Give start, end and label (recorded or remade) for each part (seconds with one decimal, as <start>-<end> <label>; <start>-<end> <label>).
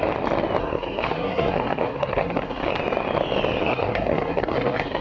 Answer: 0.0-0.6 recorded; 0.6-2.7 remade; 2.7-3.6 recorded; 3.6-5.0 remade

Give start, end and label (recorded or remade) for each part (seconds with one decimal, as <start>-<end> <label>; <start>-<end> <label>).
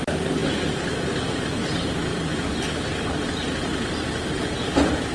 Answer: 0.0-5.1 recorded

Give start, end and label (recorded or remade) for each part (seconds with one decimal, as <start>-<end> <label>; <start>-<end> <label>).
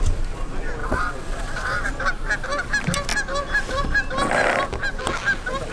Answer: 0.0-0.8 recorded; 0.8-1.9 remade; 1.9-5.7 recorded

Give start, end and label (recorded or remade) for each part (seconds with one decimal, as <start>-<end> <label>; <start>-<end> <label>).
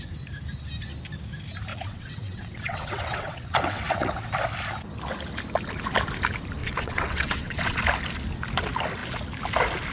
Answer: 0.0-1.7 recorded; 1.7-4.3 remade; 4.3-6.6 recorded; 6.6-7.8 remade; 7.8-9.9 recorded